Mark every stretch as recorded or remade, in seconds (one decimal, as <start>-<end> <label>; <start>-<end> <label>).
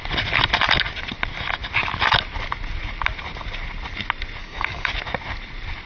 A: 0.0-4.4 recorded; 4.4-4.9 remade; 4.9-5.9 recorded